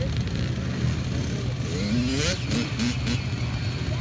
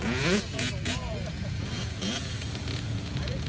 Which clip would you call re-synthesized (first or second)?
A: second